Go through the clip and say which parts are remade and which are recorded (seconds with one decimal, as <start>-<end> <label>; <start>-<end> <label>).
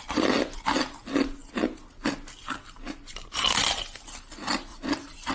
0.0-4.7 recorded; 4.7-5.3 remade